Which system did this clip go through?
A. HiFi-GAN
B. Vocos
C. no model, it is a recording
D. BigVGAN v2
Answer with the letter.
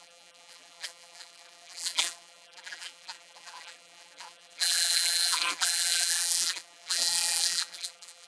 D